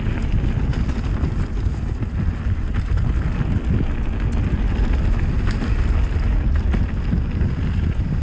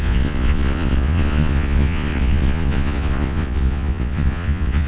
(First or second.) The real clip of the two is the first